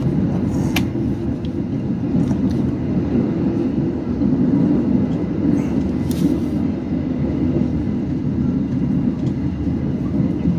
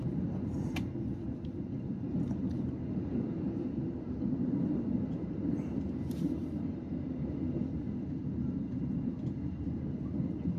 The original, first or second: first